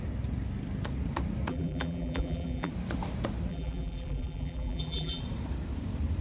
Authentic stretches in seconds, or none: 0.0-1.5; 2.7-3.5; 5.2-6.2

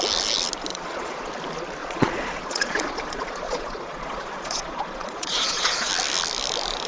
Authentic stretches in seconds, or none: 0.0-0.7; 1.3-1.8; 5.9-6.9

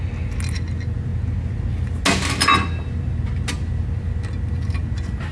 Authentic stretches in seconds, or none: 0.0-5.3

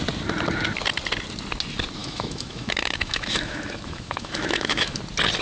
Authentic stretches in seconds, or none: 0.0-2.0; 5.0-5.4

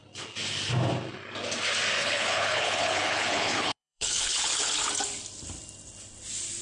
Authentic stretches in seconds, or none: 0.0-2.0; 4.9-6.6

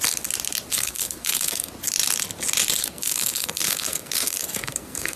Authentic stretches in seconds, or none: 0.0-0.7; 1.7-2.8

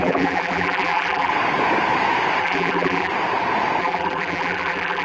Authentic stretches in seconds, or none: 1.3-2.4; 3.1-3.8